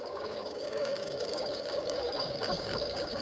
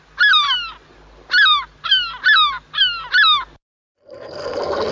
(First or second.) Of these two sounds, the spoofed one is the first